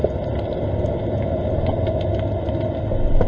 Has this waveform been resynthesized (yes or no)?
no